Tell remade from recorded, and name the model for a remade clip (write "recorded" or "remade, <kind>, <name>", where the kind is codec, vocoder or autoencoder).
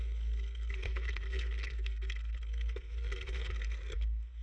remade, codec, SNAC